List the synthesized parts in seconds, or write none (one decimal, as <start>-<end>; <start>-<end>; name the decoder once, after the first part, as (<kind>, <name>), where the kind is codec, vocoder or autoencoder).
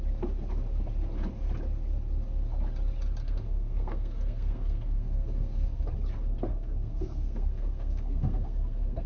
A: 3.2-5.8 (codec, SNAC); 6.5-9.1